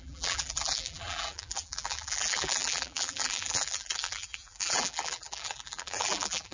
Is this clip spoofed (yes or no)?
yes